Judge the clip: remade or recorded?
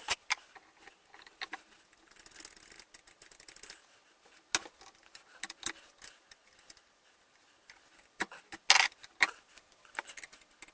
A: recorded